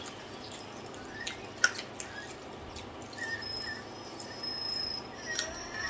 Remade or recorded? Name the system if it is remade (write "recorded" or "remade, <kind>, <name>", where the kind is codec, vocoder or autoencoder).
recorded